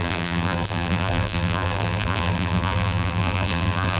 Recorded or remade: remade